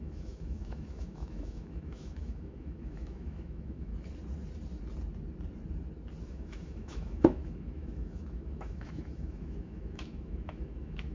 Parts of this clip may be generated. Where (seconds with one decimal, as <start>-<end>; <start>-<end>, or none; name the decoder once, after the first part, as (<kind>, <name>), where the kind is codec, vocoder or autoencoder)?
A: 0.0-3.9 (autoencoder, DAC-VAE); 6.3-11.1